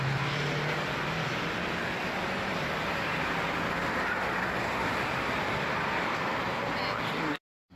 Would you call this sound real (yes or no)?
yes